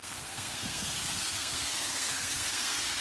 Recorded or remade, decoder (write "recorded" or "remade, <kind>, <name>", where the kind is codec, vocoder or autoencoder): remade, codec, SNAC